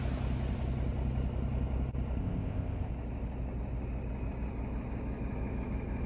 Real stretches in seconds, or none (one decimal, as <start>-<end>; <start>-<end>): 0.0-2.2; 2.9-6.1